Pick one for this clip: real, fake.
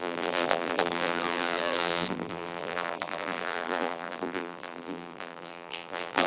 fake